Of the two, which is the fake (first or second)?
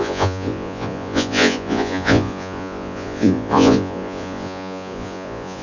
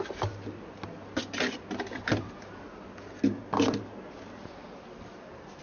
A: first